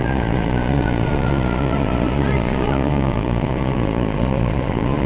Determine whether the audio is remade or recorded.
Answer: remade